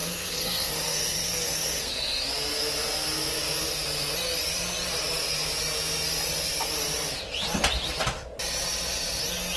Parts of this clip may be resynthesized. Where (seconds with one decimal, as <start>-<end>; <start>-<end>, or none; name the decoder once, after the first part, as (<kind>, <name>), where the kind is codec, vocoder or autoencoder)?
0.0-1.9 (codec, SNAC)